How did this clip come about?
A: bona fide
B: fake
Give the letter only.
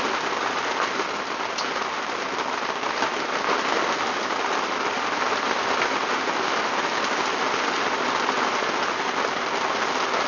A